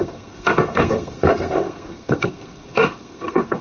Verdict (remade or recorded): remade